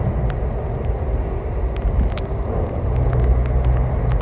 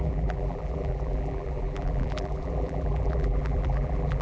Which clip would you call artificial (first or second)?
second